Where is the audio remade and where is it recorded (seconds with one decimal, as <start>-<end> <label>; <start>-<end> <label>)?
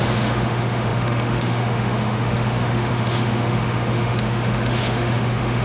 0.0-5.6 remade